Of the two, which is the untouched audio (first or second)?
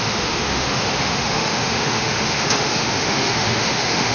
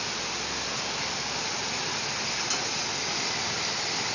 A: second